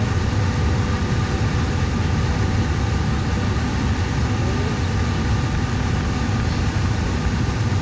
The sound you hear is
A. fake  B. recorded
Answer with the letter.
B